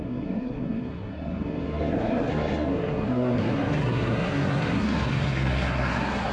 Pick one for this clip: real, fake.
fake